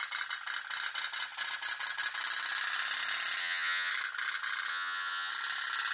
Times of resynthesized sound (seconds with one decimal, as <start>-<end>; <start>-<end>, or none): 3.4-3.9; 4.7-5.3